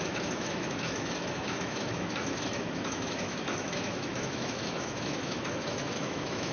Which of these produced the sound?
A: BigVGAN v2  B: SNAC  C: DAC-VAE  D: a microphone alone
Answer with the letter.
C